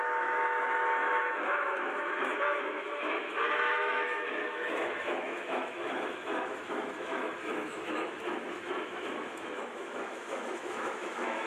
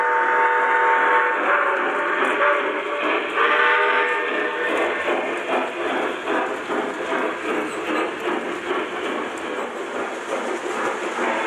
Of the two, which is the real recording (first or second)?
second